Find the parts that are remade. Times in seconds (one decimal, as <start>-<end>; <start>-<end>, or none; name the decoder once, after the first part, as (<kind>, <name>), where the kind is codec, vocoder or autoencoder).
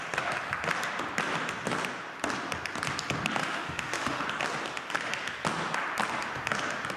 3.4-4.2 (autoencoder, DAC-VAE)